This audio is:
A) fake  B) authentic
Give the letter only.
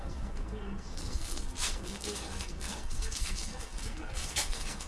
A